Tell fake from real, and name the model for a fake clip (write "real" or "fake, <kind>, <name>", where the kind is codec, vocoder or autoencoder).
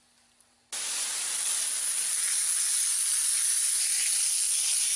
real